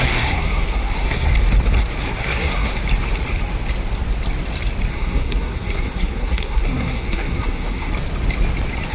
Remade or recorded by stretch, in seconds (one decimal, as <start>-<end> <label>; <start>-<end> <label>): 0.0-1.3 remade; 1.3-2.2 recorded; 2.2-2.7 remade; 2.7-4.9 recorded; 4.9-7.9 remade; 7.9-8.9 recorded